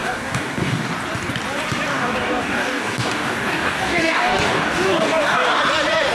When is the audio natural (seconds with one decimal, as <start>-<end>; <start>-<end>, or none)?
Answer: 0.9-1.9; 5.6-6.1

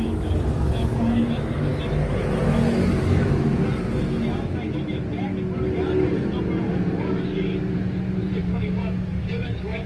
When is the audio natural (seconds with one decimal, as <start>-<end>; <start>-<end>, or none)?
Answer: 1.7-3.0; 3.5-6.9; 7.5-8.4

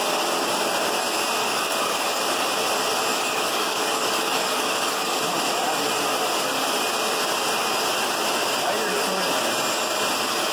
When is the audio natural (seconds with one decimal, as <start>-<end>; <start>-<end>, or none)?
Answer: 0.0-1.4; 2.2-3.1; 5.2-10.5